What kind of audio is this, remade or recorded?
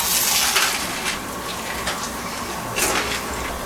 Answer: recorded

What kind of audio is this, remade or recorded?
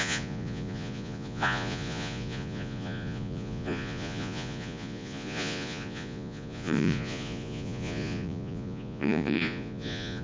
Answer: remade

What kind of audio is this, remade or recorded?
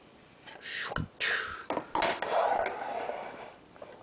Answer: recorded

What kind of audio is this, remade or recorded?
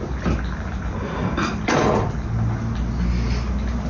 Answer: recorded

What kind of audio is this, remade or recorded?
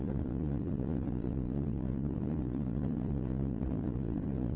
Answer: remade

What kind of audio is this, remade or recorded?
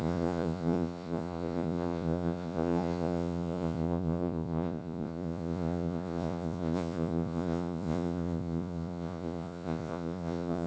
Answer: remade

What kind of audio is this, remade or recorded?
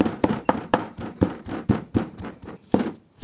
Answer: remade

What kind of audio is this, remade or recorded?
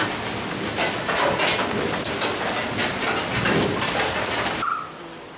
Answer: recorded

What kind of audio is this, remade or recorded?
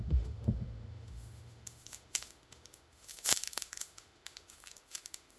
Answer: remade